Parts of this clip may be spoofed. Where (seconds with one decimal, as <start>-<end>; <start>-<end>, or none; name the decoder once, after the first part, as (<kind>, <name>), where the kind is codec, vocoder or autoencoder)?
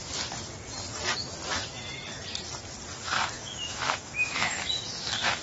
3.0-4.5 (autoencoder, DAC-VAE); 5.0-5.4